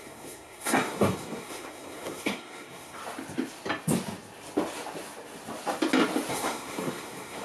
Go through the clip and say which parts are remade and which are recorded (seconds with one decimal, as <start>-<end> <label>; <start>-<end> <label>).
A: 0.0-3.0 remade; 3.0-6.3 recorded; 6.3-7.4 remade